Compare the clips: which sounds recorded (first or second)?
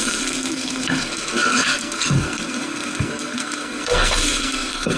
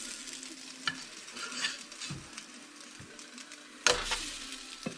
second